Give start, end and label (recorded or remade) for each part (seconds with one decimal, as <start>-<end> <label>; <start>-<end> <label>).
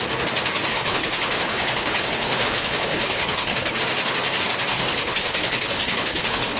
0.0-0.7 recorded; 0.7-3.8 remade; 3.8-4.7 recorded; 4.7-6.6 remade